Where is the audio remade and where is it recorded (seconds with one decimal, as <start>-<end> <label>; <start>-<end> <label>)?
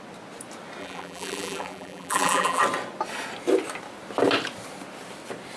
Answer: 0.0-0.8 recorded; 0.8-2.6 remade; 2.6-5.6 recorded